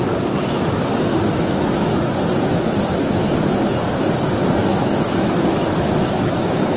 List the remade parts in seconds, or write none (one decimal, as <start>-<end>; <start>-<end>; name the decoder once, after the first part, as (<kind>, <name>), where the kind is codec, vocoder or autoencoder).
1.1-1.6 (autoencoder, DAC-VAE); 4.7-6.8